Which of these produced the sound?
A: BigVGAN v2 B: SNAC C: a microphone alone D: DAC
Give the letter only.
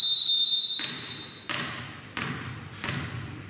C